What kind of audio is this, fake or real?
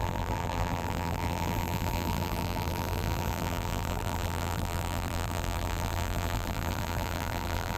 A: fake